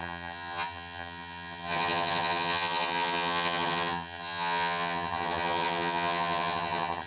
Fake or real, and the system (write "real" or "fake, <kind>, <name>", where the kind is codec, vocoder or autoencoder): fake, vocoder, HiFi-GAN